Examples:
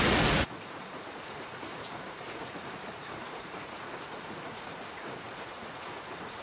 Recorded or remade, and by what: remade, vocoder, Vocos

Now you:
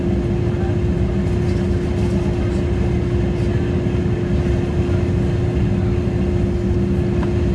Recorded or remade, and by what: recorded